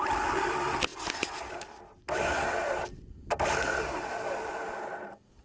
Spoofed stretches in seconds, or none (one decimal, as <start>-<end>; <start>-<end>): none